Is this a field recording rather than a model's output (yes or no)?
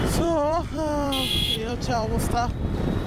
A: no